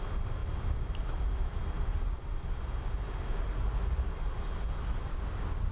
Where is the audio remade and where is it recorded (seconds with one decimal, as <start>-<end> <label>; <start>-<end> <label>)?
0.0-5.1 recorded; 5.1-5.7 remade